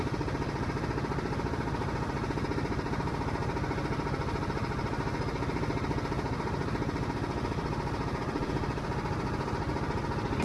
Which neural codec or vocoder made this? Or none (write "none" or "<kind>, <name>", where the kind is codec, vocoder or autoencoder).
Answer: none